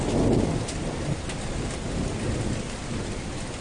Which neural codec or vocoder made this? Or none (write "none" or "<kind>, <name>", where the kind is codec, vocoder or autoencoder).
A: none